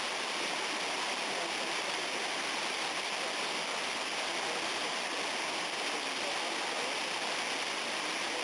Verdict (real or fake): real